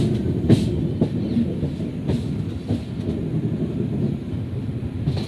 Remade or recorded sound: recorded